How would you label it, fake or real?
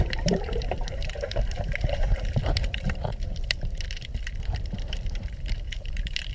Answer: fake